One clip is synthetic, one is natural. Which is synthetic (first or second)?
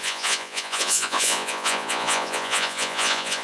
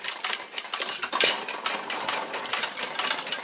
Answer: first